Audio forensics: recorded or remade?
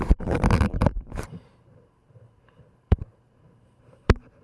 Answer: remade